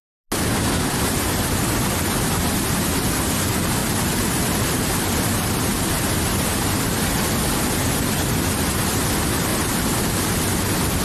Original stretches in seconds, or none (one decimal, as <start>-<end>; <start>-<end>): 0.0-3.8; 5.3-9.5; 10.5-11.0